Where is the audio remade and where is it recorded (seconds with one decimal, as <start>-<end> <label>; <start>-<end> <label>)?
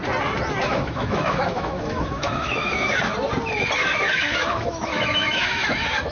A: 0.0-0.6 recorded; 0.6-2.9 remade; 2.9-3.8 recorded; 3.8-6.1 remade